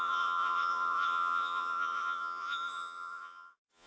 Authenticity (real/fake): fake